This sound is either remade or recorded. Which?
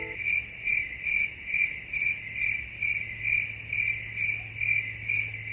recorded